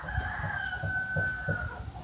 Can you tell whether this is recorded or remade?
recorded